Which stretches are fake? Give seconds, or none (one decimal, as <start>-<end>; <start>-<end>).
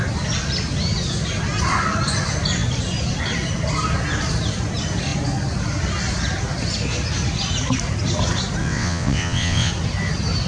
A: 8.6-9.7